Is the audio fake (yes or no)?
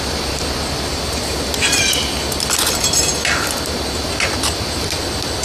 no